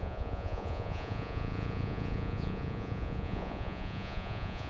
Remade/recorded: remade